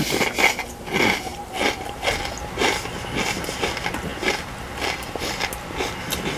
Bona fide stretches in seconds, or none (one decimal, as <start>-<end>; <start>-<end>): 0.0-6.4